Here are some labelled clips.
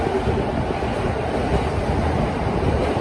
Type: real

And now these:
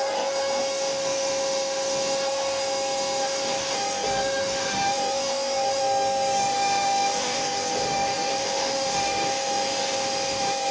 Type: fake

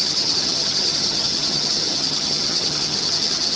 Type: fake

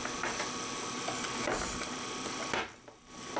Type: real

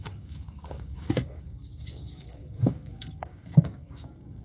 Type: fake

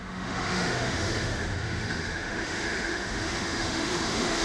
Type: fake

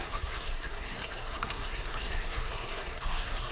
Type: fake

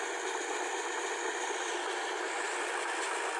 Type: real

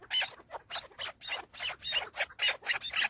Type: real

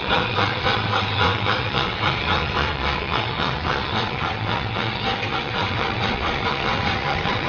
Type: fake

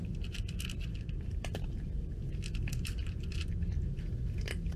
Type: real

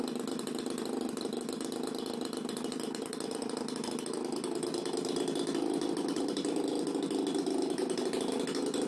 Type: fake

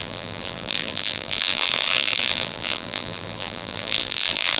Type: fake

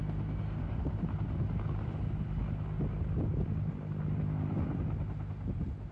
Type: real